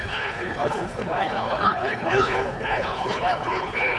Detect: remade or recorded remade